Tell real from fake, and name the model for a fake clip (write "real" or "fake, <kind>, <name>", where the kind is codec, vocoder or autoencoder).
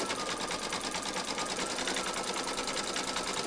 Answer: real